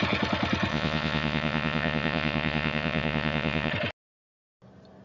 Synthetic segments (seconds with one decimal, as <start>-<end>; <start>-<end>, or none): 0.7-3.7